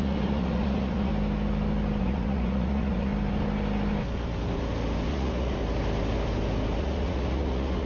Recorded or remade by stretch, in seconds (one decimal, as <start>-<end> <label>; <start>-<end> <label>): 0.0-1.1 remade; 1.1-2.0 recorded; 2.0-3.1 remade; 3.1-5.1 recorded; 5.1-5.6 remade; 5.6-6.8 recorded; 6.8-7.9 remade